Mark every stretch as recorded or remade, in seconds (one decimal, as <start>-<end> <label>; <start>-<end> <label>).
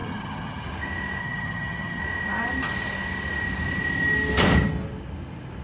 0.0-0.7 remade; 0.7-1.2 recorded; 1.2-2.0 remade; 2.0-5.6 recorded